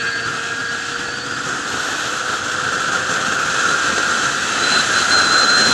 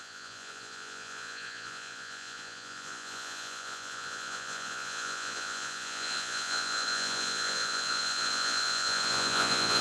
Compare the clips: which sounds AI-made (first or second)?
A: second